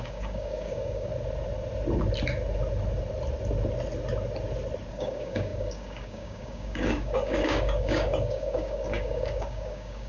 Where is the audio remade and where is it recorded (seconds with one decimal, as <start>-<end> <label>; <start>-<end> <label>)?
0.0-1.1 remade; 1.1-4.9 recorded; 4.9-10.1 remade